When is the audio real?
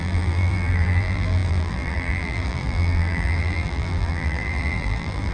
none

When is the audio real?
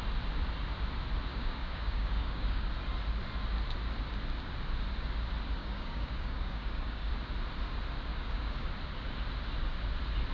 0.0-1.3; 2.7-5.6; 7.1-8.1; 8.7-10.3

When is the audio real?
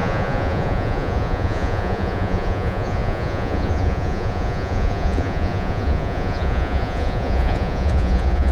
none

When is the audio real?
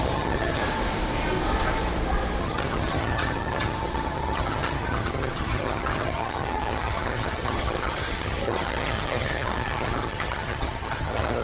0.6-2.4